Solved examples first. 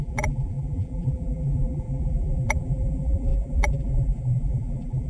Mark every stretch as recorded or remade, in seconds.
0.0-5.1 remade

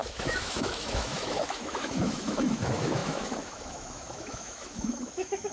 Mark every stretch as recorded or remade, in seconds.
0.0-5.5 remade